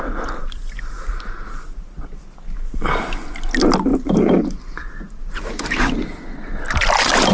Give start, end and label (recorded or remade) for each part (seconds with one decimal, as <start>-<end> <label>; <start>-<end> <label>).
0.0-3.9 recorded; 3.9-6.0 remade; 6.0-7.3 recorded